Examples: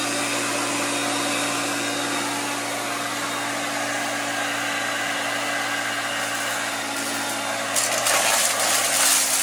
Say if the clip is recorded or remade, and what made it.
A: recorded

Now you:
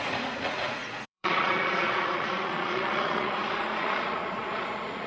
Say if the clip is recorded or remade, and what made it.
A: remade, vocoder, Vocos